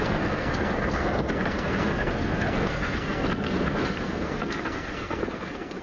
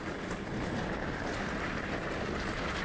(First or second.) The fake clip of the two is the first